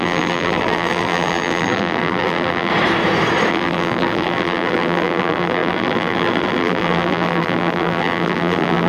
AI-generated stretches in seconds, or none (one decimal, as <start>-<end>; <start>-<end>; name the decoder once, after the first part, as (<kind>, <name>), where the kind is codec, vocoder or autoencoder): 0.0-2.7 (vocoder, BigVGAN v2); 3.5-8.9